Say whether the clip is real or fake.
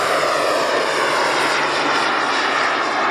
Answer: real